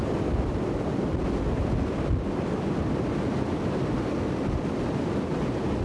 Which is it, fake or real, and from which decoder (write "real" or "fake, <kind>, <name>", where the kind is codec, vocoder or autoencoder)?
real